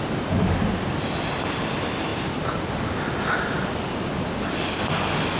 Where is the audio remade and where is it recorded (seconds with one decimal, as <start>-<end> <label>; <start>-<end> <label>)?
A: 0.0-5.4 recorded